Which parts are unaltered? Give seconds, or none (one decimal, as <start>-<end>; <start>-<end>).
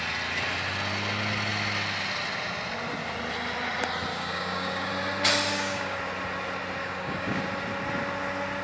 0.0-4.1; 4.9-5.5; 6.0-6.8; 7.4-8.6